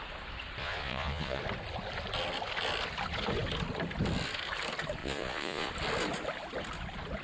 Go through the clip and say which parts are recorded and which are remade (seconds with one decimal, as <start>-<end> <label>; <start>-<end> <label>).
0.0-0.6 recorded; 0.6-1.4 remade; 1.4-5.0 recorded; 5.0-5.7 remade; 5.7-7.2 recorded